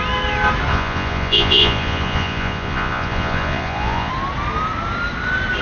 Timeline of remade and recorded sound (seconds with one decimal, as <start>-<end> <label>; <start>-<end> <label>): 0.0-0.7 recorded; 0.7-4.1 remade; 4.1-5.6 recorded